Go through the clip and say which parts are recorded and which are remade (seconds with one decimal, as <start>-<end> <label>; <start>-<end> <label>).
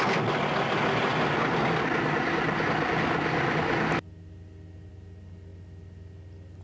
0.0-6.6 recorded